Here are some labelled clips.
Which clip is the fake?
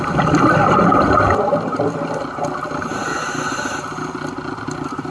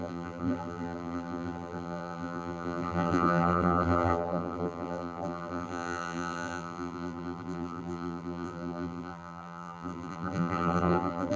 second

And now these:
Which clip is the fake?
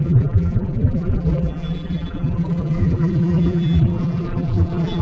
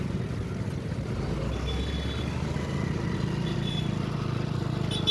first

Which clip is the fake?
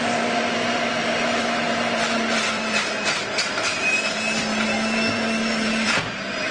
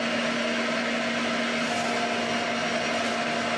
first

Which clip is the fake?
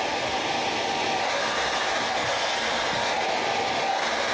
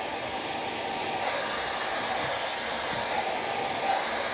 second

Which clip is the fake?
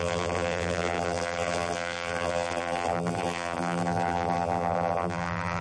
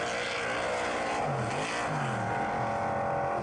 first